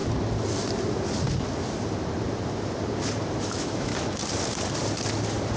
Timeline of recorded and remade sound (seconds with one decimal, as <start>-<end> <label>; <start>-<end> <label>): 0.0-3.4 recorded; 3.4-3.9 remade; 3.9-5.6 recorded